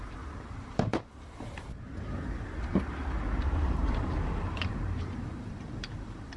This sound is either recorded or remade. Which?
remade